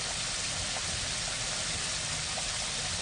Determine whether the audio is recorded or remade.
recorded